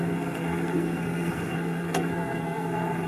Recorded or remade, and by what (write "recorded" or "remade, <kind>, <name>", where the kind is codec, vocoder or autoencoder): remade, codec, SNAC